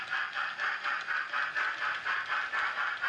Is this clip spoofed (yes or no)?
no